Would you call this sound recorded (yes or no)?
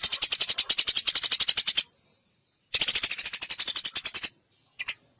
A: yes